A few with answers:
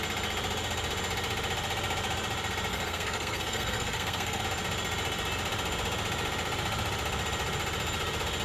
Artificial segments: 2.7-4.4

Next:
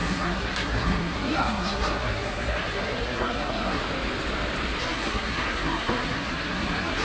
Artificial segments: 0.0-3.8; 4.8-7.0

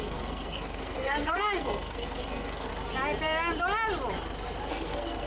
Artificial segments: 0.0-2.7; 4.7-5.3

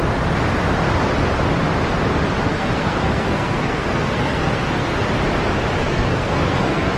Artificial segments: 2.5-5.0; 5.8-7.0